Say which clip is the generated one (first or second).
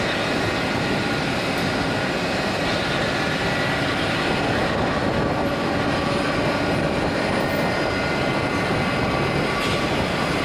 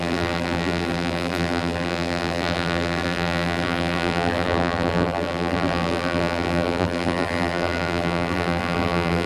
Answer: second